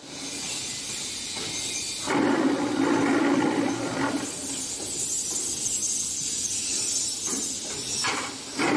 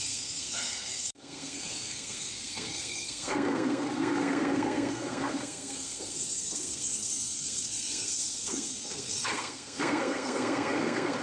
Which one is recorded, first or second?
first